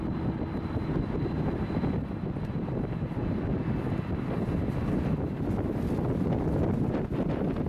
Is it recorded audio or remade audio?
recorded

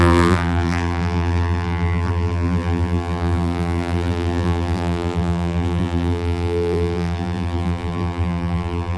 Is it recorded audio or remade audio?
remade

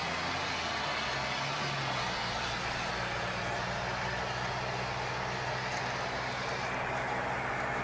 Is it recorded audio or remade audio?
recorded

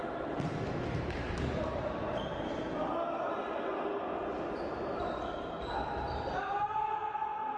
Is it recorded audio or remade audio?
recorded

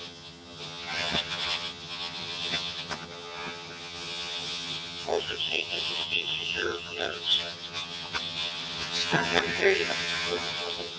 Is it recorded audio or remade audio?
remade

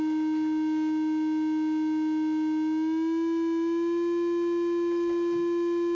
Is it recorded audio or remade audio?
recorded